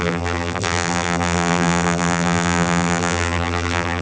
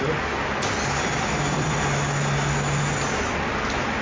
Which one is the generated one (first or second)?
first